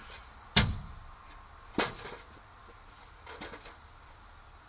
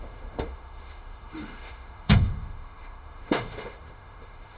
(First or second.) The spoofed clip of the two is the second